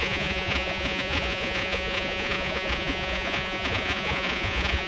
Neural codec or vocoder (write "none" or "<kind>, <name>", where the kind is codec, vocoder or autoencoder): vocoder, Vocos